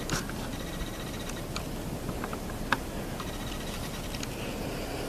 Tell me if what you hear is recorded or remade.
recorded